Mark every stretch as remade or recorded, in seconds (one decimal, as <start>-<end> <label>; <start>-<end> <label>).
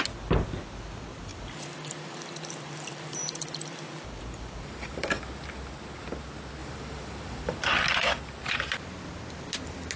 0.0-1.3 recorded; 1.3-5.2 remade; 5.2-6.6 recorded; 6.6-7.7 remade; 7.7-10.0 recorded